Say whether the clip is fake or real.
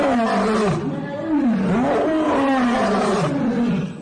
real